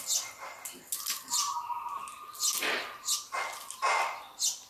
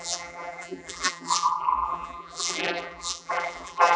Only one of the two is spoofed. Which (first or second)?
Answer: second